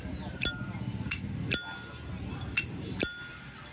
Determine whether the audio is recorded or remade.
recorded